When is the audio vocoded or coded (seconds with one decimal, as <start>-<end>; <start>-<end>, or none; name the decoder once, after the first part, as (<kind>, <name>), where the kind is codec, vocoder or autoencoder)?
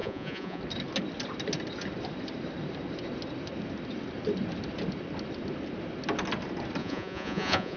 0.0-0.6 (vocoder, Vocos); 6.8-7.8